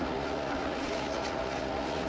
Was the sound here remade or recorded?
remade